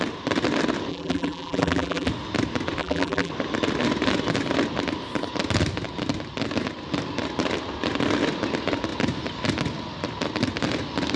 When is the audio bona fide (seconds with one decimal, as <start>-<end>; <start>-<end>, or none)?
0.0-0.9; 2.1-2.8; 3.3-11.2